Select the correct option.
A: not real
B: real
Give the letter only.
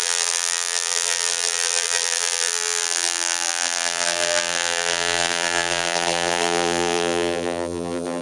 A